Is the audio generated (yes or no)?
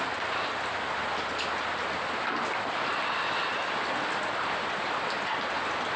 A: no